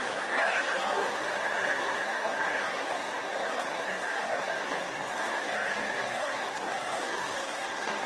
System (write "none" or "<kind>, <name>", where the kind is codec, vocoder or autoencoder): codec, SNAC